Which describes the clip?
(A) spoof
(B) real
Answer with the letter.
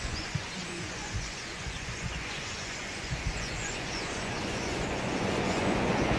A